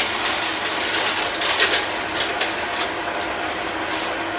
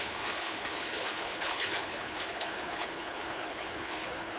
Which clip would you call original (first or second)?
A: first